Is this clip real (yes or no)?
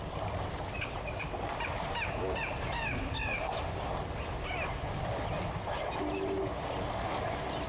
yes